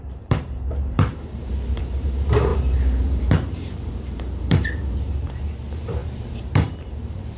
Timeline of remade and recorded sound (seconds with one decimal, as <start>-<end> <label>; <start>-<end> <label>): 0.0-7.4 remade